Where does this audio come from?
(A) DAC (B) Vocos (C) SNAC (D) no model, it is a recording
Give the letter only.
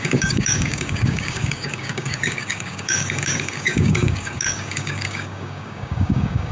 A